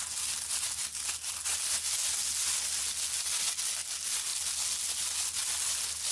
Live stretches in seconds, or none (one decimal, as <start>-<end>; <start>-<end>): 0.0-6.1